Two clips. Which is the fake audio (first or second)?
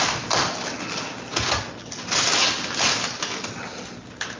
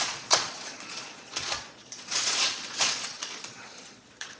second